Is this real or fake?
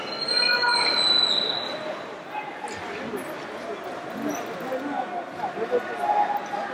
real